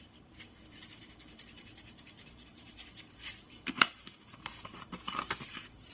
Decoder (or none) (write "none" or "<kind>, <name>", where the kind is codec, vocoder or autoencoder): vocoder, BigVGAN v2